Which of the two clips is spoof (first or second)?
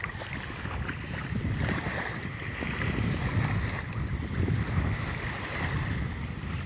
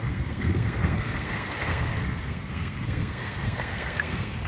second